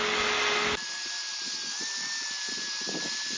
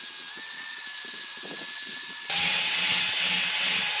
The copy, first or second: second